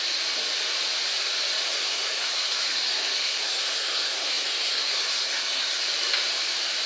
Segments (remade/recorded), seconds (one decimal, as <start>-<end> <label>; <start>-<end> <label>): 0.0-1.7 recorded; 1.7-5.8 remade; 5.8-6.9 recorded